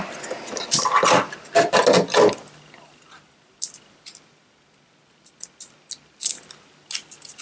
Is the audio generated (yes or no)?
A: no